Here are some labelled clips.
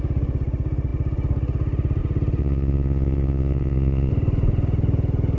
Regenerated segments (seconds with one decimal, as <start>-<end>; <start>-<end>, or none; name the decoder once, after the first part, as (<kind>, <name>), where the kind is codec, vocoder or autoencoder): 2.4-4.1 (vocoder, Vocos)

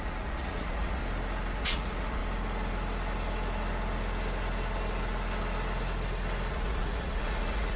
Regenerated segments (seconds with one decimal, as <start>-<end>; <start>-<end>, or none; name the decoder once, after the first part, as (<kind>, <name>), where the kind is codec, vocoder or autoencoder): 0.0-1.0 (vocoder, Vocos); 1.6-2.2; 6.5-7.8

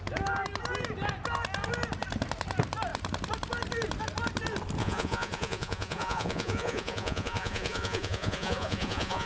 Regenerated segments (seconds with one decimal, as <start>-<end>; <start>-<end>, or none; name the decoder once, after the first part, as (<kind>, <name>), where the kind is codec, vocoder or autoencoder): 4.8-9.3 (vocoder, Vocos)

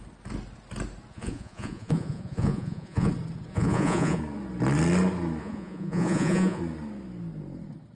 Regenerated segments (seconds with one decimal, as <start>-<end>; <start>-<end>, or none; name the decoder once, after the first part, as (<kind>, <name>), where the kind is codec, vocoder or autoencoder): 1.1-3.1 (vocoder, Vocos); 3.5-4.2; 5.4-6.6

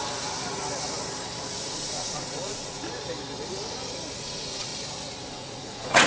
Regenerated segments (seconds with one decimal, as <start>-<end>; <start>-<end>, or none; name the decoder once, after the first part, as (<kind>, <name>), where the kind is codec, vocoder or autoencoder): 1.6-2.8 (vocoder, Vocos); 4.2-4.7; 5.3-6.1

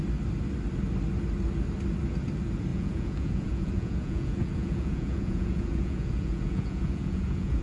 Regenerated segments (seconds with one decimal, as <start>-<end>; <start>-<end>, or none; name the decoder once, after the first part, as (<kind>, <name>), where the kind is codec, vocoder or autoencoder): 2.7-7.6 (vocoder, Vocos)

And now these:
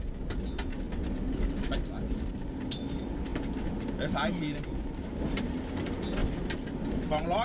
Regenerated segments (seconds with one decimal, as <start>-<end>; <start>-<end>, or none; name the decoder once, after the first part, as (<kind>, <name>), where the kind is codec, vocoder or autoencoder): none

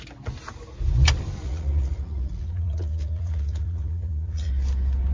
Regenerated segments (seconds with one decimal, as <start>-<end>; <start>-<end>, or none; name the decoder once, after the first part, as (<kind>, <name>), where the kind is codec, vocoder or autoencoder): 1.4-4.5 (vocoder, Vocos)